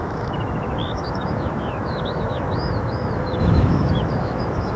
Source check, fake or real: fake